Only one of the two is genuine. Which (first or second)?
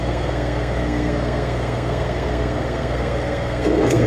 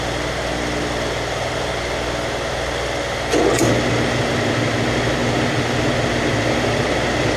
second